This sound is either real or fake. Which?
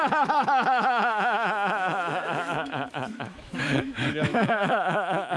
fake